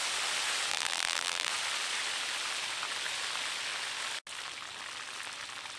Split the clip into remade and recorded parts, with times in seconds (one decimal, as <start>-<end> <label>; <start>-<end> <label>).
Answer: 0.0-0.7 recorded; 0.7-1.5 remade; 1.5-5.8 recorded